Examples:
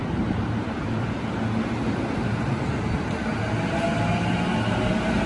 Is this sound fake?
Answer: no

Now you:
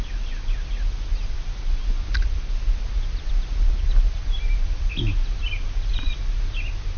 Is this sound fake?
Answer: no